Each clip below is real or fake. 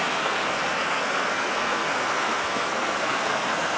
fake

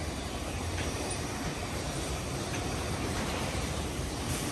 fake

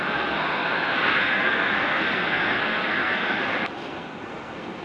fake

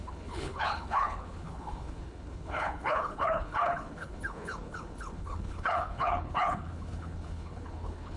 fake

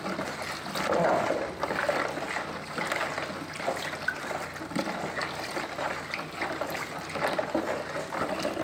real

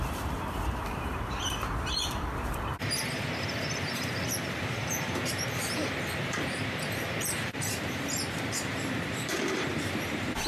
fake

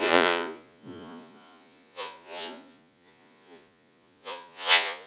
fake